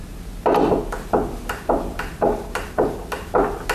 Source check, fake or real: real